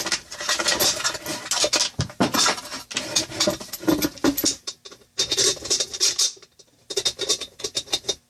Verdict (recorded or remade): recorded